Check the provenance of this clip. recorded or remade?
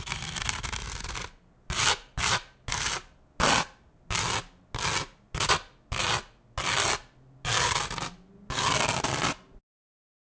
recorded